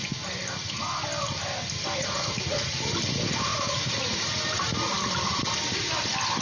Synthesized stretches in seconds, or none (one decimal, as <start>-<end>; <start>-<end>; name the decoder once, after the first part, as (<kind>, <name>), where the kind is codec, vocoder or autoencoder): none